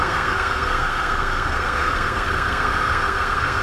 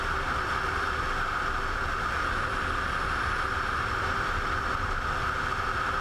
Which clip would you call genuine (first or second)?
second